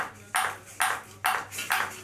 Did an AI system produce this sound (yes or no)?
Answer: no